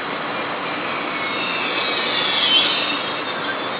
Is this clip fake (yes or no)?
no